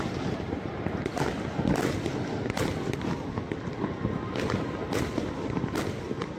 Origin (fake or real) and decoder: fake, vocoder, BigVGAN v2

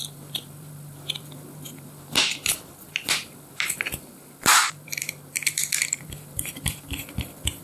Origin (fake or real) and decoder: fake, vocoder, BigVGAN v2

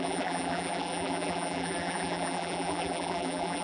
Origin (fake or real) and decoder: fake, vocoder, BigVGAN v2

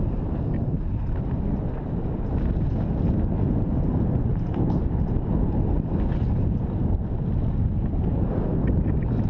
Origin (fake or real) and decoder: real